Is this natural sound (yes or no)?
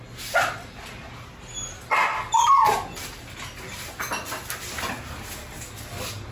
yes